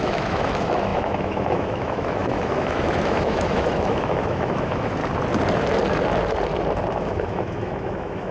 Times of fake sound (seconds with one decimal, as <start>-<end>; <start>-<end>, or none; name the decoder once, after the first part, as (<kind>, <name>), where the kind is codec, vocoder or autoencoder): 0.0-5.0 (autoencoder, DAC-VAE); 7.0-8.3